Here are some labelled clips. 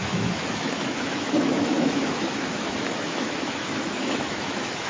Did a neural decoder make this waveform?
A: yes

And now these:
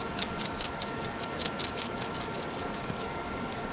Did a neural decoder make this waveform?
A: yes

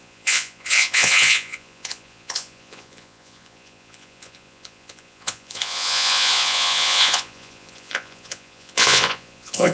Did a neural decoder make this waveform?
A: yes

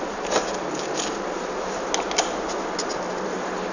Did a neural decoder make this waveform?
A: no